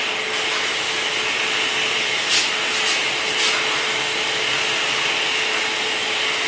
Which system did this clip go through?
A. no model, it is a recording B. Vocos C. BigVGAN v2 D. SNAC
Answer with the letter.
A